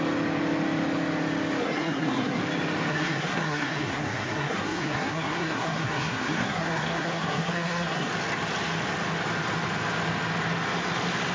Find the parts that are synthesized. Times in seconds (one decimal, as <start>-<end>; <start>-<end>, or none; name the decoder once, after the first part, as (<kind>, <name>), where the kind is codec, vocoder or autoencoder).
1.6-2.4 (codec, SNAC); 2.9-8.1